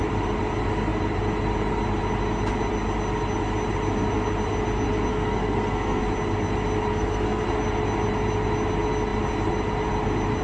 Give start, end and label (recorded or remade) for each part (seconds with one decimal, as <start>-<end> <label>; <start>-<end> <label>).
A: 0.0-5.1 recorded; 5.1-6.0 remade; 6.0-6.9 recorded; 6.9-7.4 remade; 7.4-10.4 recorded